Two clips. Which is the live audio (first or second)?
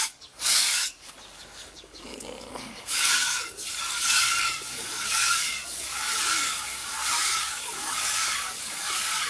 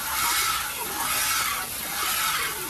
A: second